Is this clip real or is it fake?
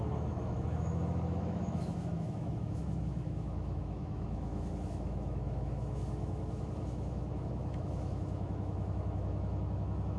fake